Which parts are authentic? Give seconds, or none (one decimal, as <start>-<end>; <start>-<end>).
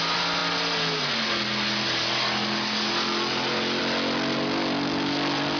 0.0-5.6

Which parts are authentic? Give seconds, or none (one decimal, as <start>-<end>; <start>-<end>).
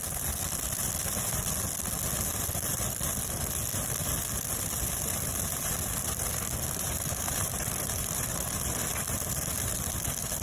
0.0-10.4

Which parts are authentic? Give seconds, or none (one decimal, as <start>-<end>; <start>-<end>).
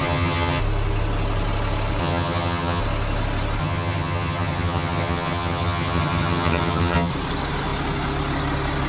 0.6-2.0; 2.8-3.6; 7.1-8.9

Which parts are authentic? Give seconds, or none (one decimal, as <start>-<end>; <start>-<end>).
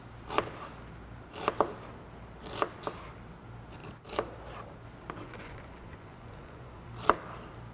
0.0-5.2; 6.9-7.7